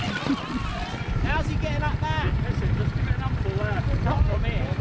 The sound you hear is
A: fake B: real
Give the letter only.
B